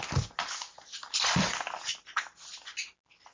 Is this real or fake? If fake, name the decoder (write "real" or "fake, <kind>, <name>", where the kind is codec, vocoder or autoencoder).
real